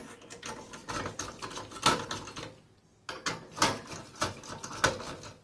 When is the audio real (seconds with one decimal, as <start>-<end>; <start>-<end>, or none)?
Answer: 0.0-5.4